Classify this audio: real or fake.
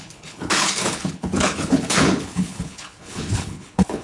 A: fake